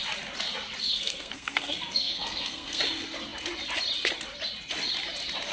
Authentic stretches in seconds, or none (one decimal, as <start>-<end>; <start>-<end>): 0.0-0.8; 2.8-5.5